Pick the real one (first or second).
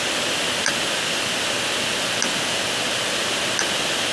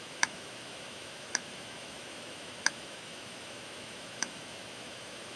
first